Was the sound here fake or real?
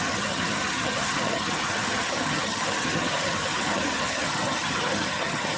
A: fake